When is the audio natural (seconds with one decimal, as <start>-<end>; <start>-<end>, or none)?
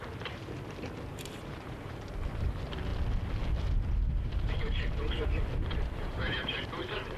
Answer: 2.9-4.1